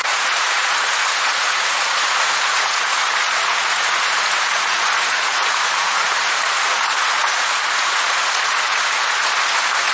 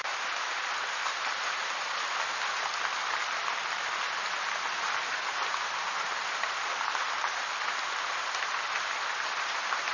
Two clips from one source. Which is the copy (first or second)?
first